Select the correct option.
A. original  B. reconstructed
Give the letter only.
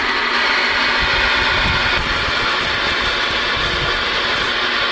A